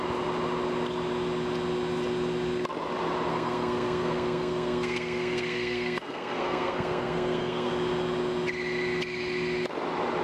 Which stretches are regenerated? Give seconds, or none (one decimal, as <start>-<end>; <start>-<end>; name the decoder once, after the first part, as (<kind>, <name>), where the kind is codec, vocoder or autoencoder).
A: 3.3-7.7 (codec, SNAC)